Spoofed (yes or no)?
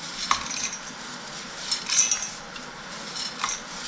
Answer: no